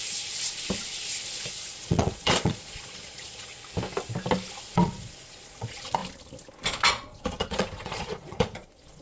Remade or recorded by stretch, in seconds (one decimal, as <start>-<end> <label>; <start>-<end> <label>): 0.0-1.5 recorded; 1.5-3.5 remade; 3.5-4.6 recorded; 4.6-6.0 remade; 6.0-6.9 recorded; 6.9-9.0 remade